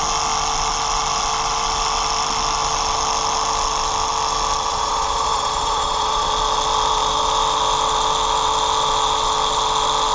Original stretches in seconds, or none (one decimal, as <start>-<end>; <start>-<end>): 0.0-4.7; 6.3-10.1